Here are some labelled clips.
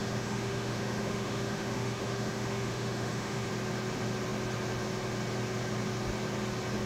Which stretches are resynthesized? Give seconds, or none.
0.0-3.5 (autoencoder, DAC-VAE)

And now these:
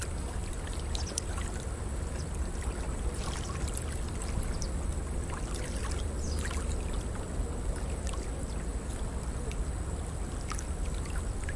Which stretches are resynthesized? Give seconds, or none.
none

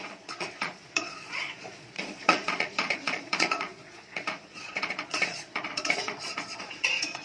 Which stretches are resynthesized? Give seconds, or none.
0.0-7.2 (vocoder, Vocos)

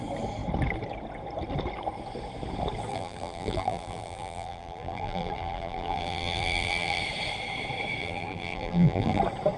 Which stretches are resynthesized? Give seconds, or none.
2.9-7.0 (vocoder, BigVGAN v2); 8.0-9.2

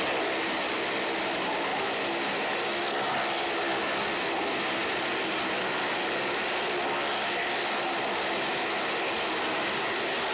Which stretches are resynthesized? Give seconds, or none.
none

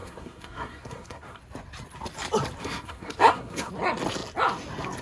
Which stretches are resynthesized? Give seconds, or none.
0.0-1.4 (codec, SNAC); 2.6-3.7

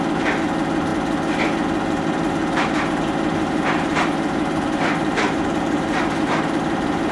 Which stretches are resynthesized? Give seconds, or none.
2.4-7.1 (vocoder, BigVGAN v2)